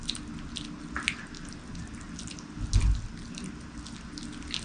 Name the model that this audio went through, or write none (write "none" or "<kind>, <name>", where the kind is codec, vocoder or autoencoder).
none